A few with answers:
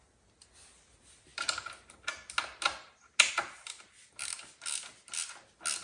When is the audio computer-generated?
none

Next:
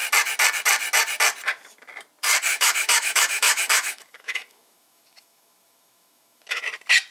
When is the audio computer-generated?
2.5-6.6 (autoencoder, DAC-VAE)